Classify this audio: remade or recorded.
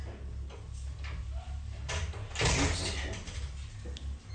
recorded